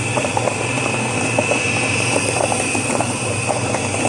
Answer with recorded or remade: remade